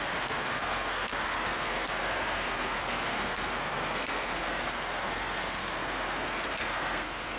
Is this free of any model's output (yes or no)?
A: no